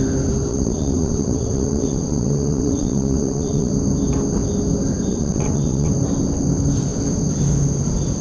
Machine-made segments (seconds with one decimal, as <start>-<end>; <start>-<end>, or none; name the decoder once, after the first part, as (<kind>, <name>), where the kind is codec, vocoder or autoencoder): 0.5-3.7 (vocoder, WaveNeXt); 5.1-5.9